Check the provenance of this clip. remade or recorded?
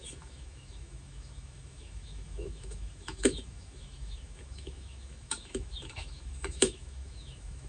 remade